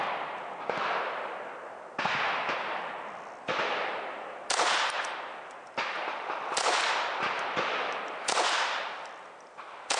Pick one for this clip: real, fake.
fake